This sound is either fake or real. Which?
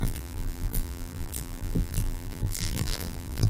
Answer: fake